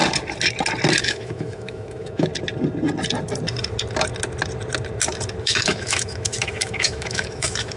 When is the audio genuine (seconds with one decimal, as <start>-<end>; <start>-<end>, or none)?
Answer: 0.0-1.0; 2.3-5.4